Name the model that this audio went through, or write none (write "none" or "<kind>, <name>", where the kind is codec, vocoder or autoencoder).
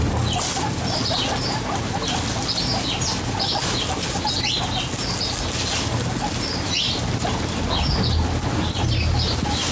none